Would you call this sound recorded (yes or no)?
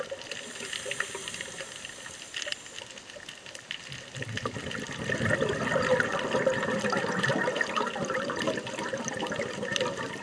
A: yes